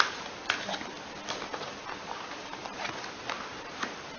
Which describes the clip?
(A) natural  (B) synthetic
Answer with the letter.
A